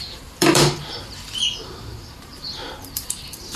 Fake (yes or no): yes